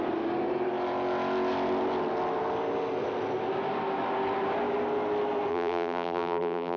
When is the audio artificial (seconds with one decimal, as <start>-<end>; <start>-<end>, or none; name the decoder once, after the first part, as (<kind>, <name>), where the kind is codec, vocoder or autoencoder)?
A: 5.5-6.8 (vocoder, BigVGAN v2)